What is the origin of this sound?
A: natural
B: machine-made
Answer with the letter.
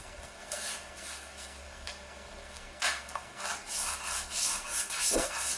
B